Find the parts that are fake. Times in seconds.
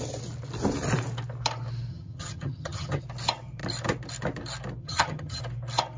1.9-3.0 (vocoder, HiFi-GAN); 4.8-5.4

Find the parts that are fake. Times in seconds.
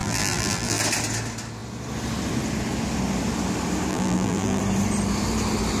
0.0-0.8 (vocoder, BigVGAN v2); 3.9-4.6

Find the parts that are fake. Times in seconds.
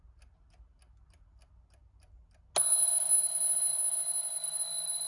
none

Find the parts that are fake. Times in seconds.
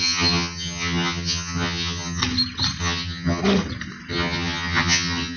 0.0-2.2 (vocoder, HiFi-GAN); 2.8-3.4; 4.1-5.4